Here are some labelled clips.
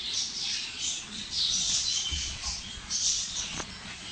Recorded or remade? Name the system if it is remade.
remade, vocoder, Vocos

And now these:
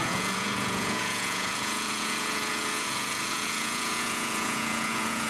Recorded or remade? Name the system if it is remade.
remade, vocoder, Vocos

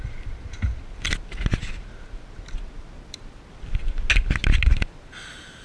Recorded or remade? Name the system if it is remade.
recorded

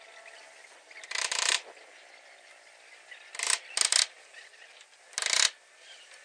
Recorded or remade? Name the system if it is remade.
recorded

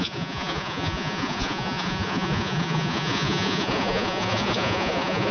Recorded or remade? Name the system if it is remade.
remade, vocoder, Vocos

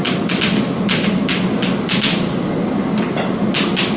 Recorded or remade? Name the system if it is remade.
recorded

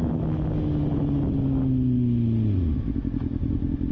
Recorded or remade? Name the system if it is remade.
recorded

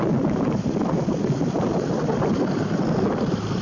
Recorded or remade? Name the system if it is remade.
recorded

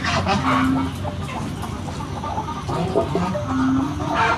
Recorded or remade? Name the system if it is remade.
recorded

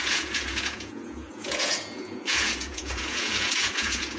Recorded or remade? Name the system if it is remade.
remade, vocoder, Vocos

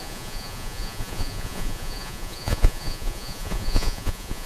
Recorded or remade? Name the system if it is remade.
remade, vocoder, Vocos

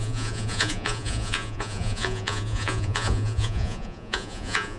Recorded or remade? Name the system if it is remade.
remade, vocoder, Vocos